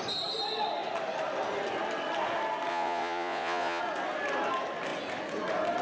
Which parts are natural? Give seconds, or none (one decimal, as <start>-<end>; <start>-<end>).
0.0-2.7; 3.8-5.8